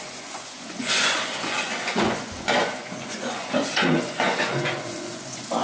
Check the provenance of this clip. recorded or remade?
remade